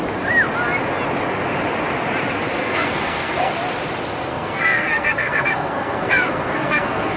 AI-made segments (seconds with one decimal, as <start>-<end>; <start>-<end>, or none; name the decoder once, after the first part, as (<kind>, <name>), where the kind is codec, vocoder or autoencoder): 2.6-3.5 (codec, SNAC); 4.3-7.2